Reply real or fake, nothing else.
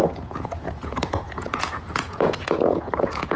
fake